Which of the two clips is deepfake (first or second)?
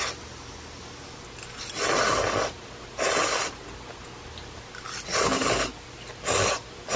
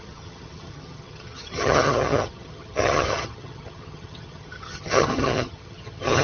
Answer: second